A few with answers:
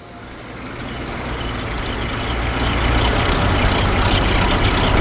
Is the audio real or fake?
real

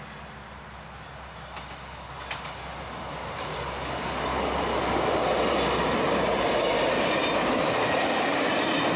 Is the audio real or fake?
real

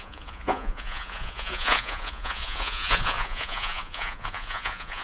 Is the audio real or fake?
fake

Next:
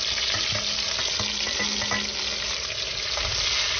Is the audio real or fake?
real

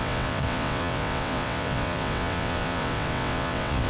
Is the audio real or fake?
fake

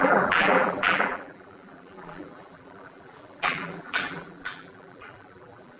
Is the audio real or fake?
fake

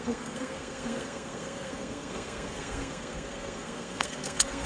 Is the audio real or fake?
fake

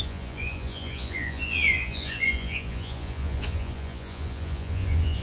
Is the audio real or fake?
fake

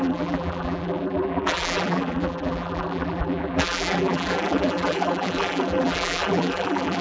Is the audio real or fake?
fake